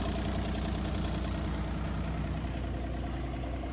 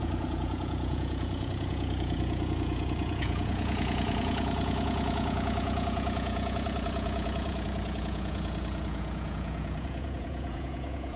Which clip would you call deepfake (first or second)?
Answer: second